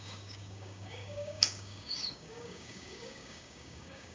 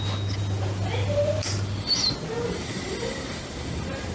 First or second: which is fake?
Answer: first